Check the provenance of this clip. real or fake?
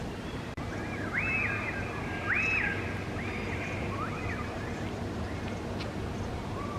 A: real